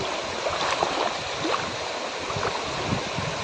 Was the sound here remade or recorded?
recorded